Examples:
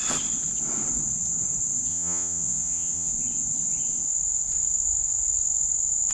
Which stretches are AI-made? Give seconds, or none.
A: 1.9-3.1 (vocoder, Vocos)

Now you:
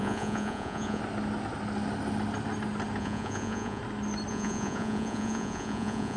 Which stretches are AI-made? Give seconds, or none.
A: 0.0-1.0 (vocoder, Vocos); 3.0-3.8; 4.3-6.2

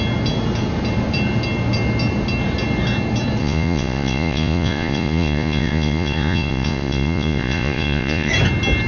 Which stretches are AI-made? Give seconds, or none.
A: 3.4-8.3 (vocoder, Vocos)

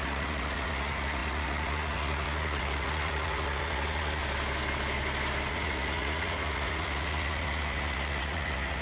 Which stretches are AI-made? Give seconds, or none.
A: 0.0-4.2 (vocoder, Vocos); 5.5-8.8

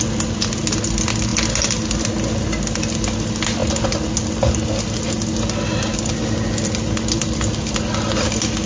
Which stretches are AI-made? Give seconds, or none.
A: none

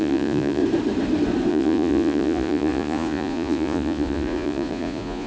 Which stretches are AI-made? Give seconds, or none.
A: 0.0-0.6 (vocoder, Vocos); 1.5-5.3

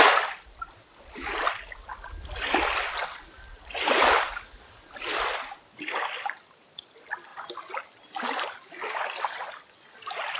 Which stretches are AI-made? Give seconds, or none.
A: none

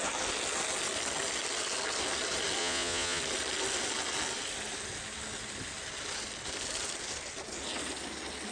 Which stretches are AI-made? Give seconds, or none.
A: 2.6-3.2 (vocoder, Vocos)